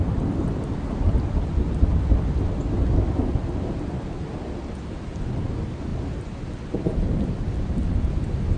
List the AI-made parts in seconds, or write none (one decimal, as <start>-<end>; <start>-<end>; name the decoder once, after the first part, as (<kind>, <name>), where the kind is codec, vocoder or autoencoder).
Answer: none